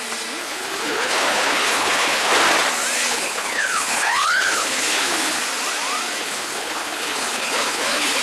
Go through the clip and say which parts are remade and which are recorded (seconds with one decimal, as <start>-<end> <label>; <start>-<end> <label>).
0.0-0.4 recorded; 0.4-2.3 remade; 2.3-3.1 recorded; 3.1-5.4 remade; 5.4-6.2 recorded; 6.2-8.2 remade